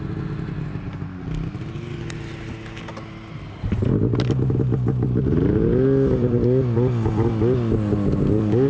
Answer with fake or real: real